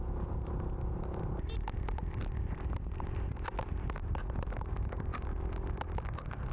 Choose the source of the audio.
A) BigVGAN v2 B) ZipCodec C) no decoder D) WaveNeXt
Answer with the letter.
C